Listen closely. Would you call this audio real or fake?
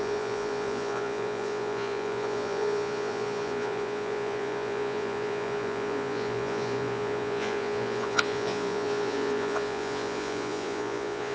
fake